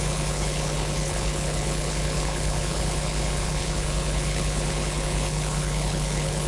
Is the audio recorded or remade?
remade